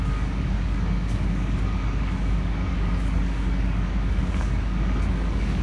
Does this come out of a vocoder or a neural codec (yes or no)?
yes